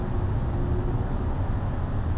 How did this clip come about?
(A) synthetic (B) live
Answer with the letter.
B